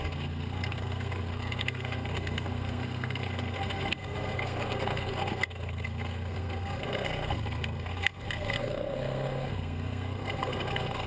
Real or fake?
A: fake